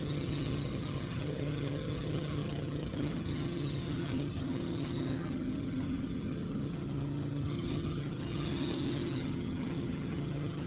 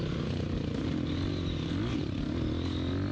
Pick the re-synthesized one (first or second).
first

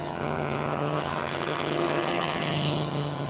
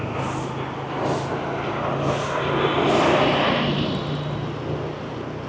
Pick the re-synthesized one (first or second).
first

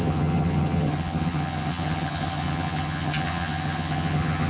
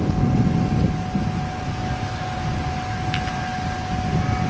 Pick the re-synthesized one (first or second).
first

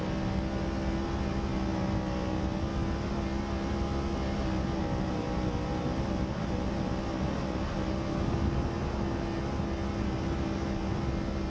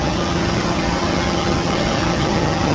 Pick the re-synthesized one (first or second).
second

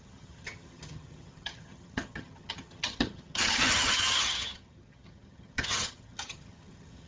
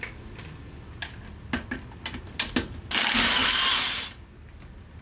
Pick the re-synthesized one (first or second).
first